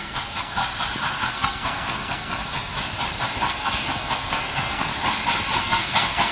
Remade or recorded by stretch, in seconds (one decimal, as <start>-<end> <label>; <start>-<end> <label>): 0.0-0.6 remade; 0.6-1.2 recorded; 1.2-2.7 remade; 2.7-3.4 recorded; 3.4-4.9 remade; 4.9-5.6 recorded; 5.6-6.3 remade